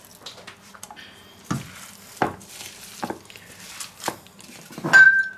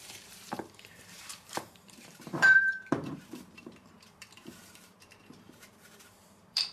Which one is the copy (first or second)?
second